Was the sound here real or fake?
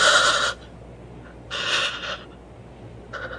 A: real